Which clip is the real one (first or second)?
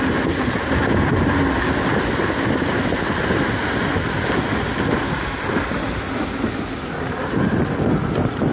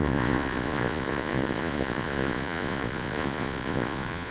first